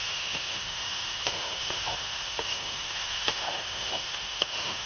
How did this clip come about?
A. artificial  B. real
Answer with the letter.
A